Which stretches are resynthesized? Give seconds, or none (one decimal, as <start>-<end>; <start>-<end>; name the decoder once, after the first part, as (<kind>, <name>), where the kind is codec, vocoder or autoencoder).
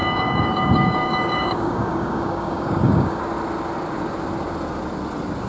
0.0-3.2 (codec, DAC)